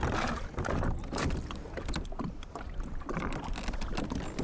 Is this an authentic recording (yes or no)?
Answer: yes